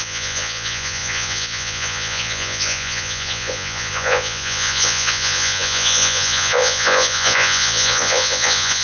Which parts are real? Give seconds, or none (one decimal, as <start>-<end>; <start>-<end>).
none